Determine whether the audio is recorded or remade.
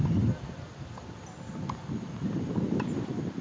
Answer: recorded